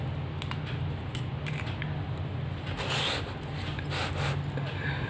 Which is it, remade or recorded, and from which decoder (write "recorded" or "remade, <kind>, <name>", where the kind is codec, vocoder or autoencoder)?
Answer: recorded